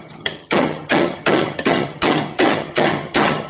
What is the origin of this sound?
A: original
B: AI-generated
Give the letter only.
B